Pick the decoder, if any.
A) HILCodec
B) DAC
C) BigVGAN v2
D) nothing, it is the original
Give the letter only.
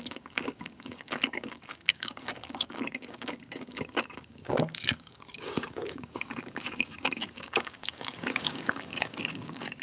B